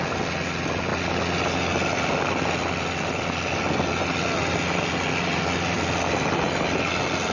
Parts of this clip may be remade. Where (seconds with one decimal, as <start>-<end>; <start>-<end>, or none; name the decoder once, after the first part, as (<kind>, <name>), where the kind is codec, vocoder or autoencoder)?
none